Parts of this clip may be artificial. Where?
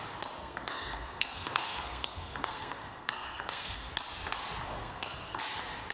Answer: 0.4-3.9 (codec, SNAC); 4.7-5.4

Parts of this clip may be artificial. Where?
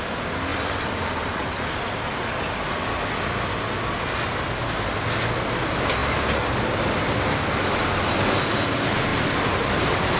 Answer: 0.5-2.1 (vocoder, BigVGAN v2); 9.1-10.2